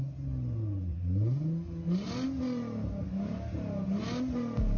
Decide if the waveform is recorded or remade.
recorded